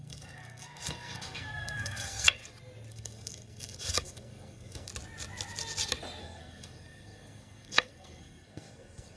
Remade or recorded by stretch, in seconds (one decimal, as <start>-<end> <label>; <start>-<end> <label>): 0.0-2.4 remade; 2.4-2.9 recorded; 2.9-4.9 remade; 4.9-6.2 recorded; 6.2-9.2 remade